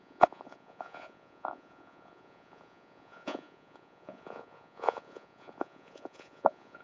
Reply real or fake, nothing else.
fake